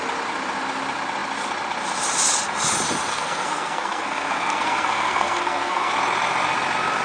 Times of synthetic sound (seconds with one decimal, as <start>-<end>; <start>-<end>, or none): 3.1-5.9